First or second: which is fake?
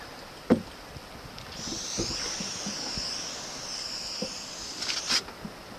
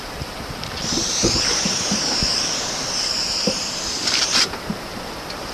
second